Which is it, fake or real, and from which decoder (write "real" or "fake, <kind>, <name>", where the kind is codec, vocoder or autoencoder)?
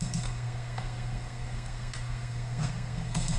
fake, codec, SNAC